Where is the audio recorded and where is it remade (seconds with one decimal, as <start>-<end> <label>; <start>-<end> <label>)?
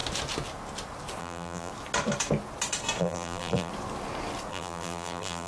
0.0-1.2 recorded; 1.2-1.7 remade; 1.7-3.0 recorded; 3.0-3.7 remade; 3.7-4.5 recorded; 4.5-5.5 remade